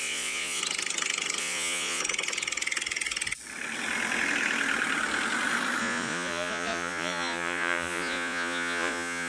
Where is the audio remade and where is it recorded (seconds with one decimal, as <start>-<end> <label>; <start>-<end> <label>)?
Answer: 0.0-0.6 remade; 0.6-1.4 recorded; 1.4-2.0 remade; 2.0-5.8 recorded; 5.8-9.3 remade